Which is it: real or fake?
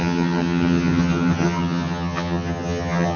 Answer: fake